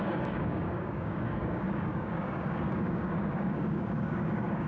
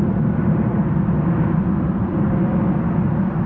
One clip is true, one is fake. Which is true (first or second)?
second